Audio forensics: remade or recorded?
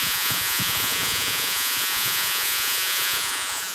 remade